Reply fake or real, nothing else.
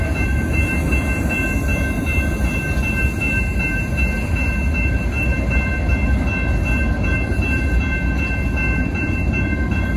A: real